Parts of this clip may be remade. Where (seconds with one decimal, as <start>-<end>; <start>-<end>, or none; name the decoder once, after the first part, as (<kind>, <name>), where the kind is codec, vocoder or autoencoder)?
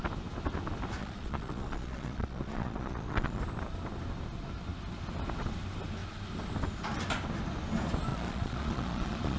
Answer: 1.0-3.4 (vocoder, Vocos); 8.1-9.4